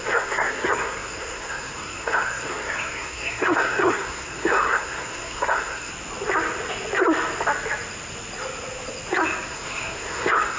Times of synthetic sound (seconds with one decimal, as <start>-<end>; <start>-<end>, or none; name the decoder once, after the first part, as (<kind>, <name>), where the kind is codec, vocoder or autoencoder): 0.0-5.9 (codec, SNAC); 9.5-10.6